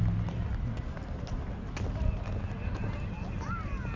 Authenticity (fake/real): real